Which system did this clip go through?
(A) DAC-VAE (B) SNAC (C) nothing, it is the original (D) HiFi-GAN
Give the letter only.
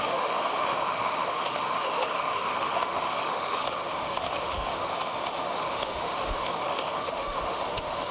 A